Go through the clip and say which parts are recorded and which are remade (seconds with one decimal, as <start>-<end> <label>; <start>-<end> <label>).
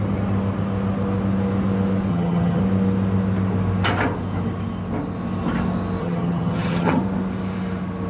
0.0-2.1 recorded; 2.1-2.6 remade; 2.6-6.0 recorded; 6.0-7.0 remade; 7.0-8.1 recorded